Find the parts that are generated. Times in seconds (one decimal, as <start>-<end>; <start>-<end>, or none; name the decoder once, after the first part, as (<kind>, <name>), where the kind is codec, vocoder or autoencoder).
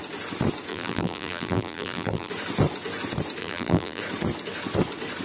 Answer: 0.7-2.3 (vocoder, BigVGAN v2); 3.4-4.0